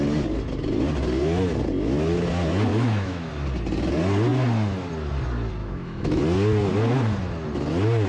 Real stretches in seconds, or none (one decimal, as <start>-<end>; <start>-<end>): 0.0-2.7; 3.3-5.6; 6.2-8.1